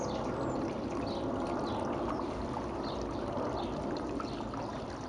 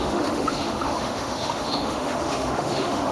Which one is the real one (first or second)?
first